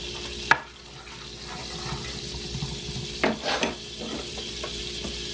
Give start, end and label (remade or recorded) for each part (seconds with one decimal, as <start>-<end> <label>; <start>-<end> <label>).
0.0-1.6 recorded; 1.6-4.8 remade; 4.8-5.3 recorded

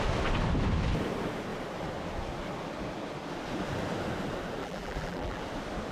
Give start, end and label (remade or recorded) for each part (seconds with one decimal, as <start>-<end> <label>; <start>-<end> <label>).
0.0-4.6 recorded; 4.6-5.4 remade; 5.4-5.9 recorded

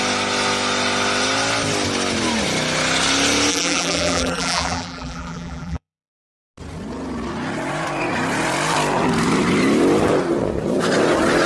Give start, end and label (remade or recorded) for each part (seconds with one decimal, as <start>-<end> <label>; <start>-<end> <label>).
0.0-3.5 recorded; 3.5-6.1 remade; 6.1-11.5 recorded

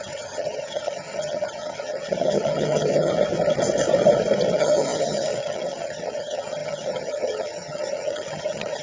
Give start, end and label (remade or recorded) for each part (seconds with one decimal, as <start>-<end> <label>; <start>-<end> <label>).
0.0-3.1 remade; 3.1-4.5 recorded; 4.5-8.8 remade